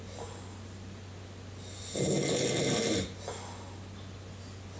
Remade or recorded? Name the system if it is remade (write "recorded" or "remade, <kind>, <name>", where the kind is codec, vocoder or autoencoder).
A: recorded